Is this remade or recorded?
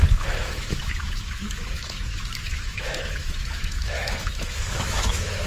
remade